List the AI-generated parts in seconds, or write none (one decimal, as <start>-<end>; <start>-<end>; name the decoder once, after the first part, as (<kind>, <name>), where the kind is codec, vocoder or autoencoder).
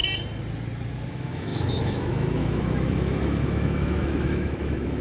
1.1-5.0 (autoencoder, DAC-VAE)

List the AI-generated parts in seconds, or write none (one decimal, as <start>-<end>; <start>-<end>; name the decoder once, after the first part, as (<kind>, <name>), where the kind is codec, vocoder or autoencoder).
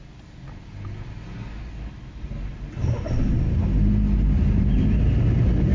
none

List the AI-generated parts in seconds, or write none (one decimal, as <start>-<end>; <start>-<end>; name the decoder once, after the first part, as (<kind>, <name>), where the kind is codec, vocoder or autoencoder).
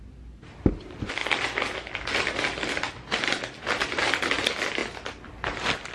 none